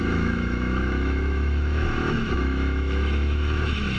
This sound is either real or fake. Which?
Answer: fake